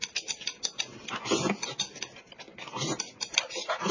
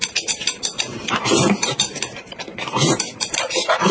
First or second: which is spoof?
second